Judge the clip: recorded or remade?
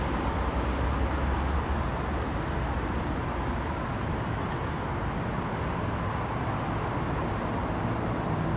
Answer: recorded